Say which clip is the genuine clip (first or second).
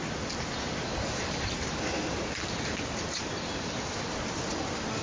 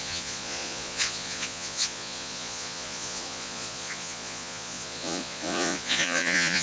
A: first